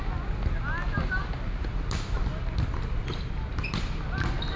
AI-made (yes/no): no